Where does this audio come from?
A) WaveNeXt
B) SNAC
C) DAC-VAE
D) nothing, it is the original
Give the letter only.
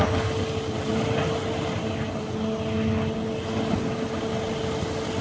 D